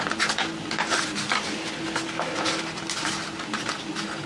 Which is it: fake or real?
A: real